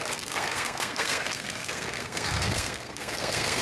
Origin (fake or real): fake